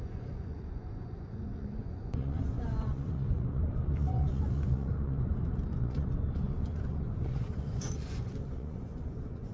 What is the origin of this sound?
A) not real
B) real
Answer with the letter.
A